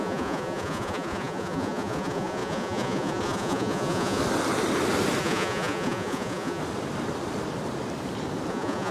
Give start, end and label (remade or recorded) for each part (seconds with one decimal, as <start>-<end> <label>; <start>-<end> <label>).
0.0-4.2 remade; 4.2-5.2 recorded; 5.2-6.6 remade; 6.6-8.5 recorded; 8.5-8.9 remade